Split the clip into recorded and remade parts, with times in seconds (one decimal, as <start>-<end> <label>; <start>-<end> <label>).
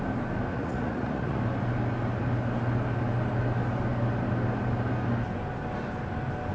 0.0-0.5 recorded; 0.5-1.4 remade; 1.4-6.5 recorded